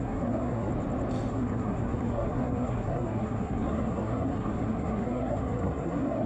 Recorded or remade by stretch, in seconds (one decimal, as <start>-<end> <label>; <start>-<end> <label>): 0.0-0.7 remade; 0.7-1.3 recorded; 1.3-6.3 remade